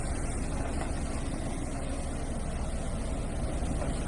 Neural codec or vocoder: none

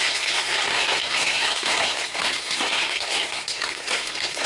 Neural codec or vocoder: codec, SNAC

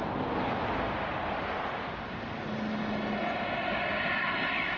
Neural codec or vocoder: none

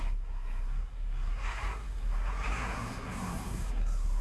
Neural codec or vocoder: codec, SNAC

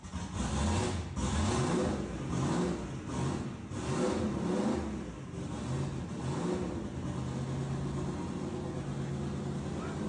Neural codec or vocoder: none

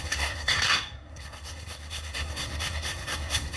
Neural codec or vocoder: codec, SNAC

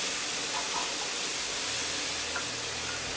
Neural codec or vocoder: none